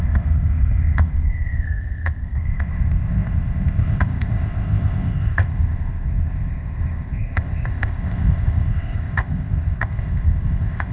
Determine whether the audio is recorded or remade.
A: remade